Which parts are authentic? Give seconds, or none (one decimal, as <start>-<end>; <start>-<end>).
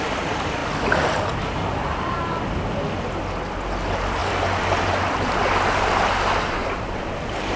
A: 0.0-6.6